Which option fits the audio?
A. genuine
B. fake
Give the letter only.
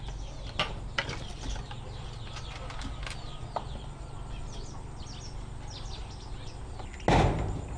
A